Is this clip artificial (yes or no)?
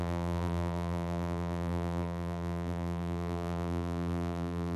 yes